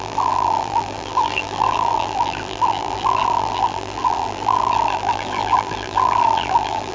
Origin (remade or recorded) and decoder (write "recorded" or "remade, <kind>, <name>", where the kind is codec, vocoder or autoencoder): remade, vocoder, BigVGAN v2